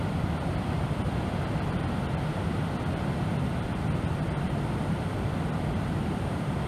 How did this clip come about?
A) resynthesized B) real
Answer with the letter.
A